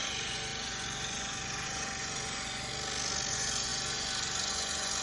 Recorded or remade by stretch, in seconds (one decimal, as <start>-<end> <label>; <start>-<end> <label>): 0.0-2.7 remade; 2.7-3.3 recorded; 3.3-5.0 remade